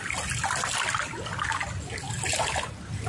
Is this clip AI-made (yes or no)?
no